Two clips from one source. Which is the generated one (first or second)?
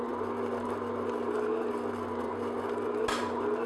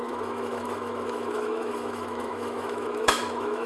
second